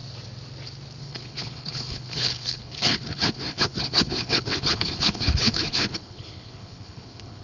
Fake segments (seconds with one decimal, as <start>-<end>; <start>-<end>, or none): 1.0-7.4